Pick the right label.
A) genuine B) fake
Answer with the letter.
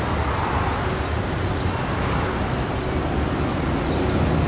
A